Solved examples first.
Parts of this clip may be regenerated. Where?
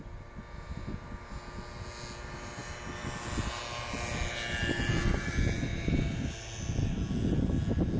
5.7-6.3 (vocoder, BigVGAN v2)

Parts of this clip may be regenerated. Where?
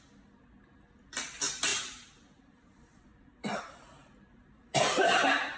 1.7-3.6 (vocoder, BigVGAN v2); 4.0-5.6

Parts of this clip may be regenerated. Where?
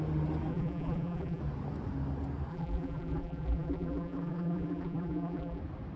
0.5-1.4 (vocoder, BigVGAN v2); 2.5-5.6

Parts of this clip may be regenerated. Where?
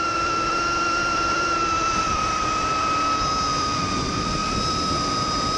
0.0-5.6 (vocoder, BigVGAN v2)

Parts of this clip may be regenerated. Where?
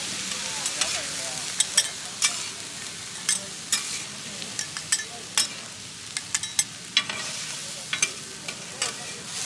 none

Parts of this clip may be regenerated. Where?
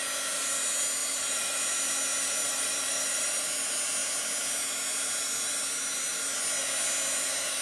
1.0-1.6 (vocoder, BigVGAN v2); 2.4-3.4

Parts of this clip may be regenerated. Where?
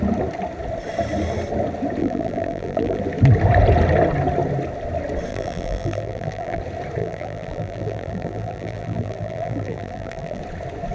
2.0-3.0 (vocoder, BigVGAN v2); 5.3-6.6; 7.0-10.4